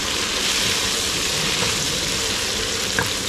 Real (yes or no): no